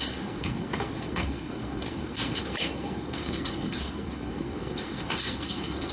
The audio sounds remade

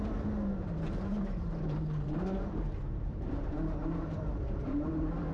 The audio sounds remade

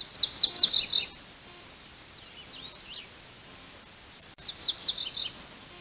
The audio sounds recorded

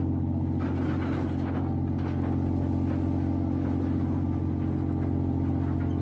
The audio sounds recorded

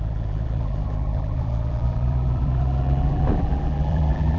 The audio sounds remade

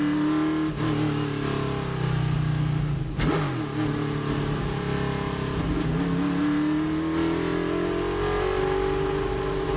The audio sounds recorded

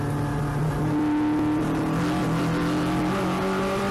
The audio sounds recorded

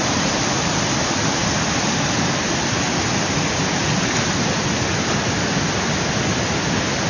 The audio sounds recorded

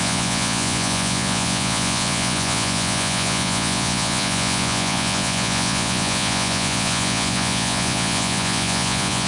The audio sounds remade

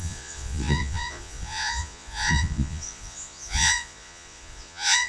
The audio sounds remade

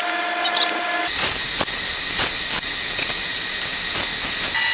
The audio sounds recorded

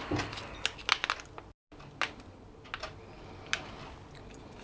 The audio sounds recorded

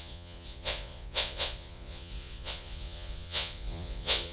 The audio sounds remade